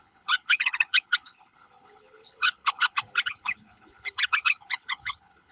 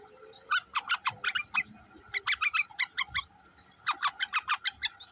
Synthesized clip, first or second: first